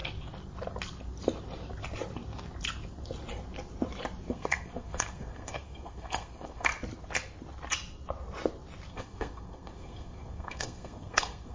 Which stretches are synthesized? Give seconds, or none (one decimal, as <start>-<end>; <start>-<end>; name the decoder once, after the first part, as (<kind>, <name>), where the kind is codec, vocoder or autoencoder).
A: 4.3-6.7 (codec, SNAC); 8.9-11.5